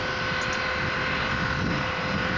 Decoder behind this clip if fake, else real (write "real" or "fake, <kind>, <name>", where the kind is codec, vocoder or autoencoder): real